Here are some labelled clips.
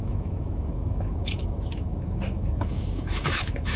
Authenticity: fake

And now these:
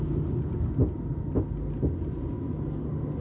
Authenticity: real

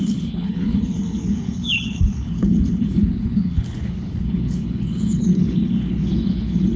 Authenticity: fake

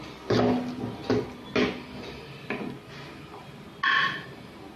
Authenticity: real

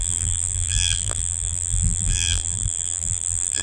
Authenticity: fake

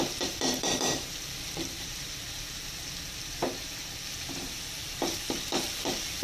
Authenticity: fake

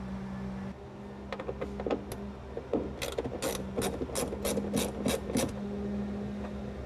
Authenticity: real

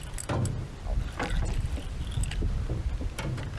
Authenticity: real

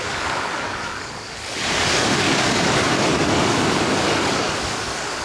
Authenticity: fake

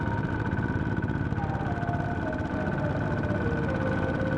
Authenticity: real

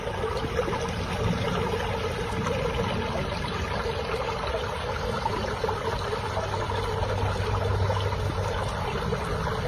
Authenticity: real